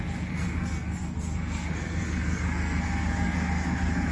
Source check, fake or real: fake